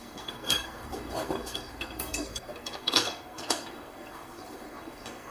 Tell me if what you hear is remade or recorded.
remade